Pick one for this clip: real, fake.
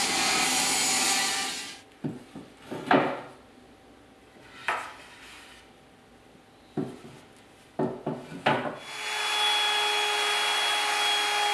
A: real